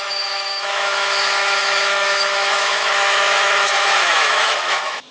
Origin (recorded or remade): remade